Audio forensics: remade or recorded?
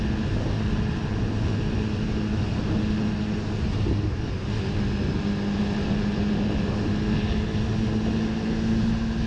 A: recorded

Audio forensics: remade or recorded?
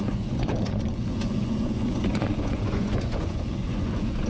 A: remade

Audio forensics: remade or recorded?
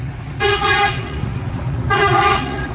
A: remade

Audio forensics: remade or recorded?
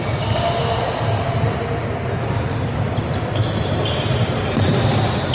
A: recorded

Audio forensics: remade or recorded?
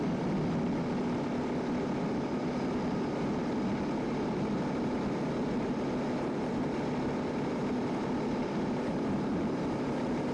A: recorded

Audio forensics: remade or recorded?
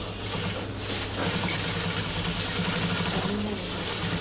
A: recorded